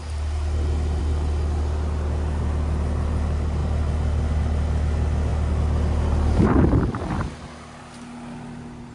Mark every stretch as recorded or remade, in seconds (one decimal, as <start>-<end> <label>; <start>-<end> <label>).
0.0-8.9 recorded